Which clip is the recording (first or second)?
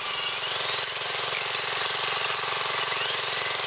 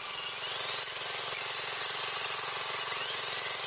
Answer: second